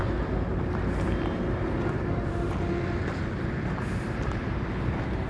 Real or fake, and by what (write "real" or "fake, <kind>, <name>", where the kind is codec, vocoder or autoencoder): real